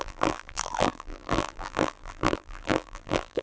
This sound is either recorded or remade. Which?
remade